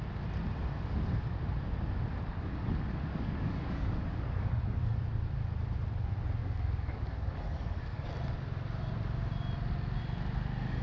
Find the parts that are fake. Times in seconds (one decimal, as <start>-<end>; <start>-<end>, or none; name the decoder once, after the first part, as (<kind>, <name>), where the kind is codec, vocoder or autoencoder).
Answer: 2.3-5.0 (codec, DAC); 6.4-8.1